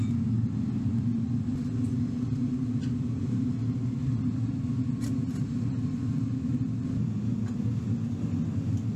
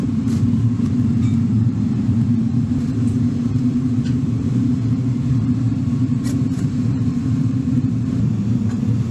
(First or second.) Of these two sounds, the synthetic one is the second